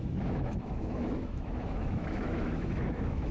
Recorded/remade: remade